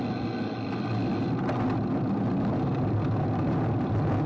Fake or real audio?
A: real